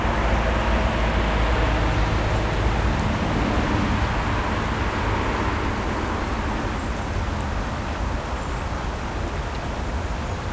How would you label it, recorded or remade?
recorded